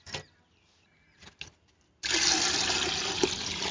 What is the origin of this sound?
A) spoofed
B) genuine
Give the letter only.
B